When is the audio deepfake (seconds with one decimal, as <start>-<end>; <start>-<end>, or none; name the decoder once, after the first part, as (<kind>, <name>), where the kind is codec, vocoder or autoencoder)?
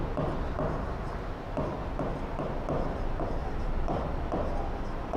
3.4-4.1 (vocoder, BigVGAN v2)